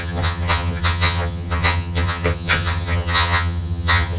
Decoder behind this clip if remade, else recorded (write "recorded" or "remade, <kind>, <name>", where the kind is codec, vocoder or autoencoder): remade, vocoder, HiFi-GAN